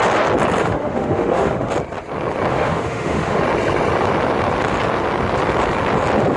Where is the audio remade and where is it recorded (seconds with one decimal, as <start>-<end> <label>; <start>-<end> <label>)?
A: 0.0-0.6 recorded; 0.6-1.7 remade; 1.7-2.5 recorded; 2.5-3.4 remade; 3.4-6.4 recorded

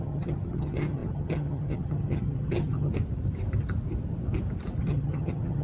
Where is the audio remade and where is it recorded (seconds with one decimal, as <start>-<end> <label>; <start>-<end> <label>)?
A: 0.0-2.9 remade; 2.9-4.8 recorded; 4.8-5.6 remade